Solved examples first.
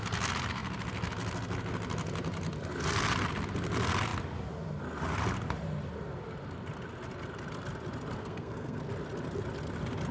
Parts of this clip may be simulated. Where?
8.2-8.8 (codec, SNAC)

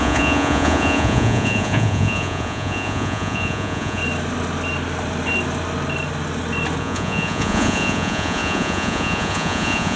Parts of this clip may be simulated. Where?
0.0-4.0 (vocoder, Vocos); 6.8-10.0

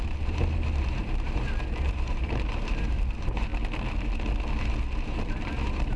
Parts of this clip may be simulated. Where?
0.0-3.5 (vocoder, BigVGAN v2); 4.5-6.0